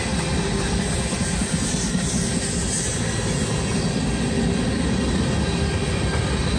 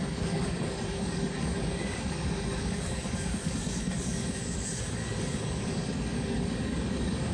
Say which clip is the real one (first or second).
first